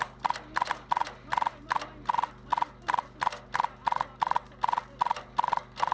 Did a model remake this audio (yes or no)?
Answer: no